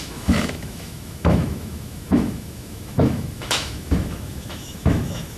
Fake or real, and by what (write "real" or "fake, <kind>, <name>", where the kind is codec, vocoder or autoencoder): fake, autoencoder, DAC-VAE